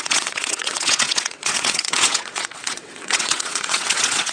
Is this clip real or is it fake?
fake